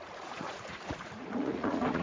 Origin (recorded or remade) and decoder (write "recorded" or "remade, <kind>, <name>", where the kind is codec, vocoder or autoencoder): remade, vocoder, Vocos